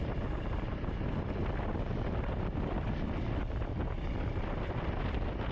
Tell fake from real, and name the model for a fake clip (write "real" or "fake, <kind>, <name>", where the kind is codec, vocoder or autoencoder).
real